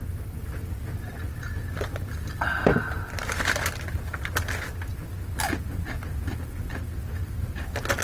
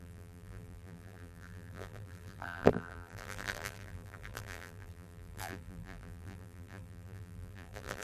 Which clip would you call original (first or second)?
first